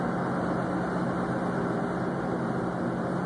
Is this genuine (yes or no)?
yes